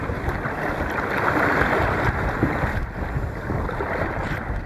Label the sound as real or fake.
real